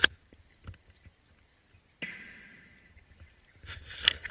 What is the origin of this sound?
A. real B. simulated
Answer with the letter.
A